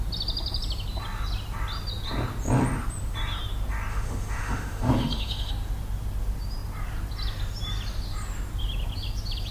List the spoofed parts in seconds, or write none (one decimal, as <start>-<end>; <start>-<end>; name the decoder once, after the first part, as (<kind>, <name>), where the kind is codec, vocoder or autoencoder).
3.9-5.5 (autoencoder, DAC-VAE)